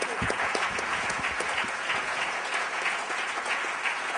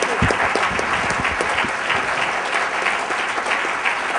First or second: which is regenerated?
first